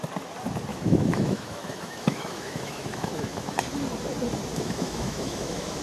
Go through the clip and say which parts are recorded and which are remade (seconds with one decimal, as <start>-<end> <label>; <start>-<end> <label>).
0.0-0.7 recorded; 0.7-3.6 remade; 3.6-4.5 recorded; 4.5-5.8 remade